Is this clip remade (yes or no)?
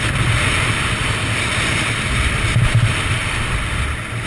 no